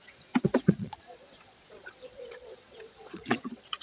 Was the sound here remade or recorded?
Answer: remade